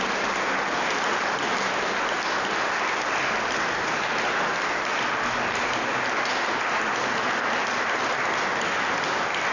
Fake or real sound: real